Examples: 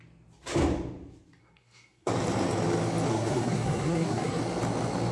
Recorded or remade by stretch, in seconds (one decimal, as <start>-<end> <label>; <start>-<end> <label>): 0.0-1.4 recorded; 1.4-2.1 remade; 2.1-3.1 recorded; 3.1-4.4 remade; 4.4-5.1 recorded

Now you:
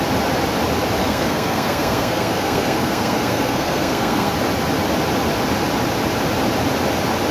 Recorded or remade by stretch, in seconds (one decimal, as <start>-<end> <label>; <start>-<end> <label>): 0.0-1.0 recorded; 1.0-4.3 remade; 4.3-7.3 recorded

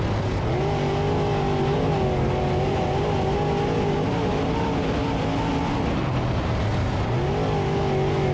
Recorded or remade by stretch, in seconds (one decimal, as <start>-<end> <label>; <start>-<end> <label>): 0.0-8.3 recorded

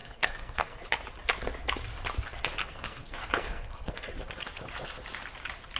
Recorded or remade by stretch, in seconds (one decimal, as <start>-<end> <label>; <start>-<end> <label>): 0.0-0.8 remade; 0.8-2.6 recorded; 2.6-4.1 remade; 4.1-5.8 recorded

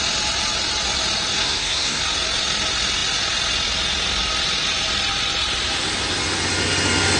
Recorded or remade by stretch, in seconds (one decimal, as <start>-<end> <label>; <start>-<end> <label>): 0.0-1.4 recorded; 1.4-2.0 remade; 2.0-7.2 recorded

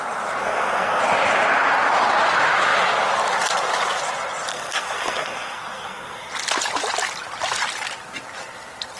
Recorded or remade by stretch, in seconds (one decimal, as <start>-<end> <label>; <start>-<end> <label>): 0.0-0.4 recorded; 0.4-1.0 remade; 1.0-4.5 recorded; 4.5-6.3 remade; 6.3-9.0 recorded

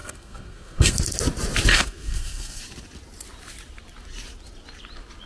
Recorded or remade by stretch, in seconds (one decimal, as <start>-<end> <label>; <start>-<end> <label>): 0.0-1.0 remade; 1.0-1.7 recorded; 1.7-2.6 remade; 2.6-5.3 recorded

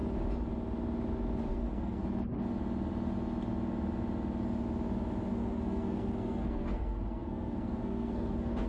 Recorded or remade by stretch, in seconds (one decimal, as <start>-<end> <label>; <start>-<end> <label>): 0.0-1.5 recorded; 1.5-2.0 remade; 2.0-5.3 recorded; 5.3-8.7 remade